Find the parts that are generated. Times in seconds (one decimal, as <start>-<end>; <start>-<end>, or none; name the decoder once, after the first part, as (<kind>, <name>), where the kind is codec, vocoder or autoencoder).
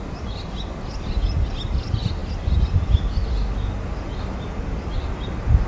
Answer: none